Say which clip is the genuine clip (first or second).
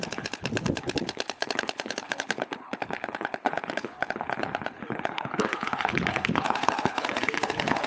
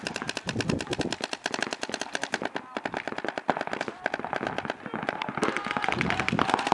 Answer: second